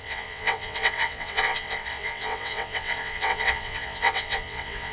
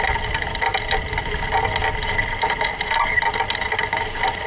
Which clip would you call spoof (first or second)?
first